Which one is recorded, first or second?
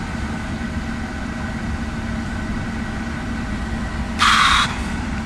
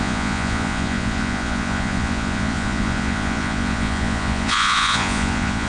first